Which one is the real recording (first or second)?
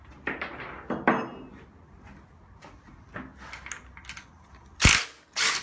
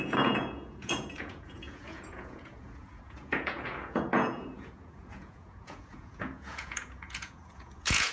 first